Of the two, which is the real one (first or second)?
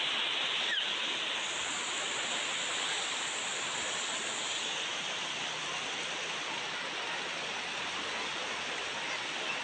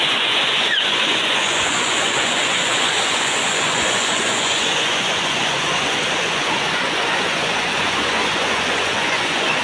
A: first